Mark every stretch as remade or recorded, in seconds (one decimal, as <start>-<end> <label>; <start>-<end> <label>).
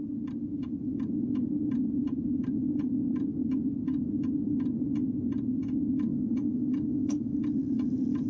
0.0-6.1 recorded; 6.1-7.4 remade; 7.4-8.3 recorded